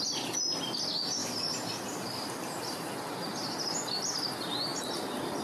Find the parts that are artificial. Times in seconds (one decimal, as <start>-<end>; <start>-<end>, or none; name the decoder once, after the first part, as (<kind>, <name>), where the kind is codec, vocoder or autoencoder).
1.2-2.9 (vocoder, BigVGAN v2)